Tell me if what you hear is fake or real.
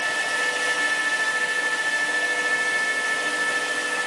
real